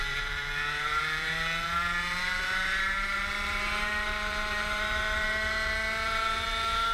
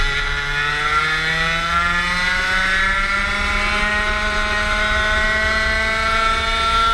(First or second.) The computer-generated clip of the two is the first